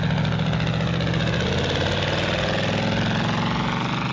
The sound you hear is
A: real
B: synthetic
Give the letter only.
A